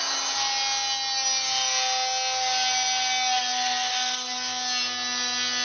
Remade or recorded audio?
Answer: recorded